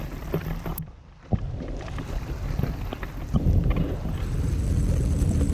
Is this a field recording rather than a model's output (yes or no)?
yes